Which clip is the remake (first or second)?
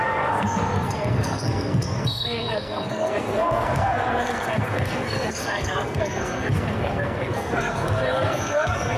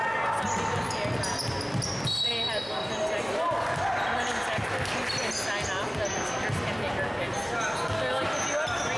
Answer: first